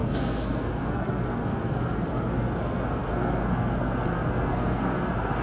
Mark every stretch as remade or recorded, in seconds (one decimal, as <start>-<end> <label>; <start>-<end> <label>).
0.0-5.4 remade

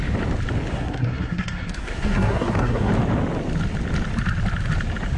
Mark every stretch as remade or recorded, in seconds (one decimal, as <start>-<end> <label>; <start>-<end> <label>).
0.0-0.7 recorded; 0.7-2.9 remade; 2.9-5.2 recorded